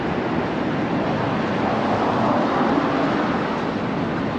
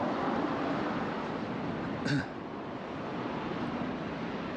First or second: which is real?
first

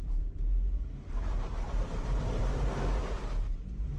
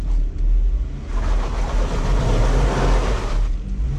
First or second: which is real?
second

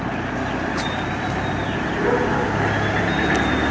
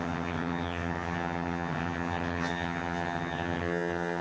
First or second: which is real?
first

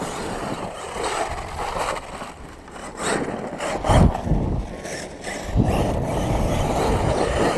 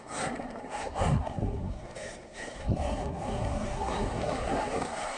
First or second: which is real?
first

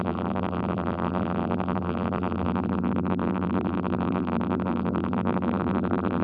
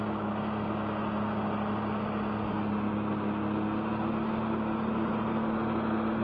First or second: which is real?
second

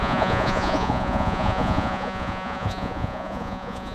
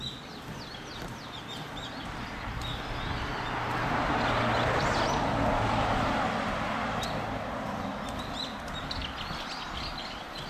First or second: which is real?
second